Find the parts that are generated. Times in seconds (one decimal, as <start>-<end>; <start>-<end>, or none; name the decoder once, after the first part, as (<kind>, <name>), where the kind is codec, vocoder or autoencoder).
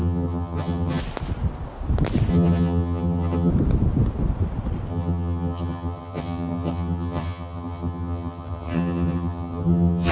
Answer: 0.0-1.0 (vocoder, HiFi-GAN); 2.3-3.5; 4.9-10.1